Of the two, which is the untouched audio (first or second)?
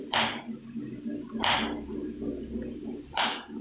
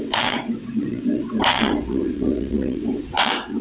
first